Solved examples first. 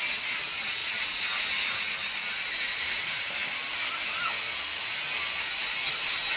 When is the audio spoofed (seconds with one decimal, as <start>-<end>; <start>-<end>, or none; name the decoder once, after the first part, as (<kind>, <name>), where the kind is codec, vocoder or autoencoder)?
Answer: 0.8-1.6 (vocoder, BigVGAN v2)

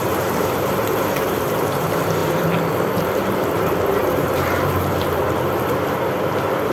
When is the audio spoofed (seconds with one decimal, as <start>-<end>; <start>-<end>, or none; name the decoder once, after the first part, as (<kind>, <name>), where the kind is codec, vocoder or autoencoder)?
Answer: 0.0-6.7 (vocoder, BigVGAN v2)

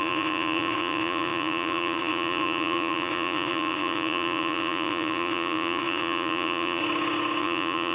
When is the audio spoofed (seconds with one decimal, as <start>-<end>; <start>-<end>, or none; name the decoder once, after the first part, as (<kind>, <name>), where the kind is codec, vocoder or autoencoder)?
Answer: 0.0-6.8 (vocoder, Vocos); 7.4-7.9

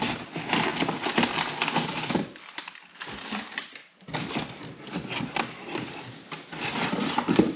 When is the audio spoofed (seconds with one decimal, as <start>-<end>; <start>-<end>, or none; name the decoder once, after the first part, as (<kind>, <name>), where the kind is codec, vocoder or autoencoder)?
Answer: none

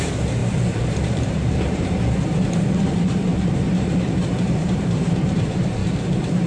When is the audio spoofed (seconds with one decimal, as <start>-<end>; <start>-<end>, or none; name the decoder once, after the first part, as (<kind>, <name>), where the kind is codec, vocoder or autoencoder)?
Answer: 0.0-6.5 (vocoder, BigVGAN v2)

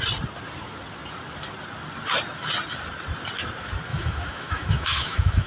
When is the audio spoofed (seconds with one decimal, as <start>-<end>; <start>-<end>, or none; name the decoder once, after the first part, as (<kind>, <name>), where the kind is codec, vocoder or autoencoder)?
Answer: 3.9-5.5 (autoencoder, DAC-VAE)

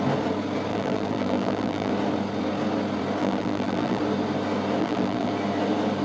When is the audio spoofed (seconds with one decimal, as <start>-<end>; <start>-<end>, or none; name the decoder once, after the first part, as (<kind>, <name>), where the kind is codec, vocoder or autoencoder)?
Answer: 0.7-1.9 (vocoder, BigVGAN v2); 3.2-4.0; 4.8-5.3